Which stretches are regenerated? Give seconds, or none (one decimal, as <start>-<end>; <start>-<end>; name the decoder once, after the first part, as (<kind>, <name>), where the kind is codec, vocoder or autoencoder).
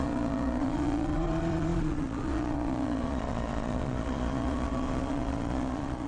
0.0-6.1 (vocoder, Vocos)